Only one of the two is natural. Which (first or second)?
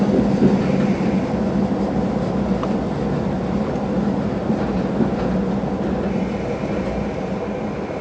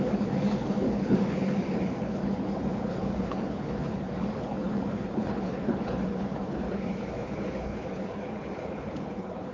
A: first